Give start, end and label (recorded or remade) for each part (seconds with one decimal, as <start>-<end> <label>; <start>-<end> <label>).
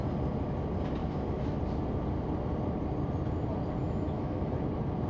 0.0-1.0 recorded; 1.0-1.6 remade; 1.6-3.8 recorded; 3.8-4.6 remade; 4.6-5.1 recorded